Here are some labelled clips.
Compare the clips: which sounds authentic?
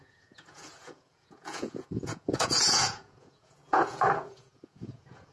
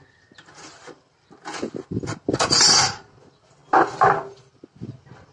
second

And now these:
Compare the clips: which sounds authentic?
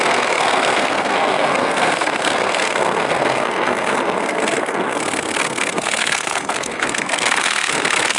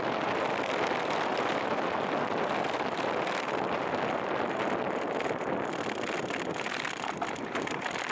second